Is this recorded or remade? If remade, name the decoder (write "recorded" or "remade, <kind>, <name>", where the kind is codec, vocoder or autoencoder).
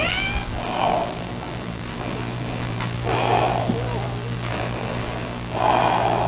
remade, vocoder, BigVGAN v2